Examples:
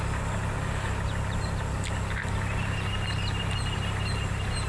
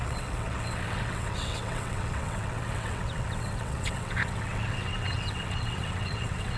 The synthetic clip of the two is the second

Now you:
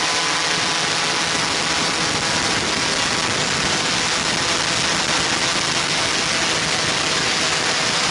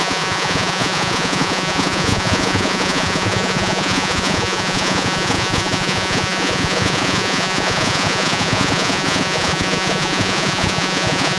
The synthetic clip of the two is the second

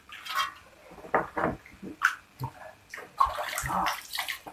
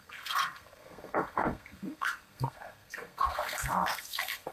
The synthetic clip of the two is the second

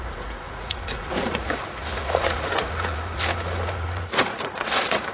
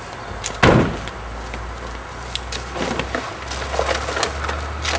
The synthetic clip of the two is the first